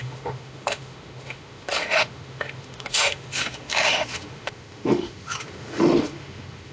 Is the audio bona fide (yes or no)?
no